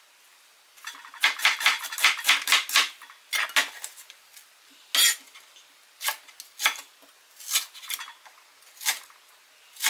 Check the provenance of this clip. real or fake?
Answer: real